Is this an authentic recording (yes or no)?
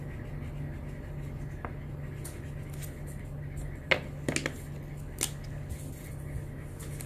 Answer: yes